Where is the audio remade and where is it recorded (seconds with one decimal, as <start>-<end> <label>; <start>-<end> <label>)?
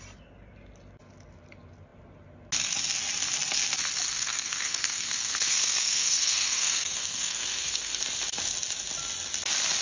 0.0-4.1 recorded; 4.1-8.0 remade; 8.0-9.8 recorded